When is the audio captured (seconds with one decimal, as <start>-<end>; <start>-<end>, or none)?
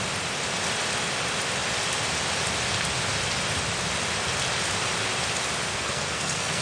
0.0-5.7